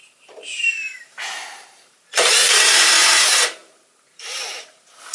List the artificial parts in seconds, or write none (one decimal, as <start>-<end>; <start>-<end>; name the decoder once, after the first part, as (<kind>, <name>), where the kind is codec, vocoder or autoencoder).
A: 0.0-5.1 (vocoder, BigVGAN v2)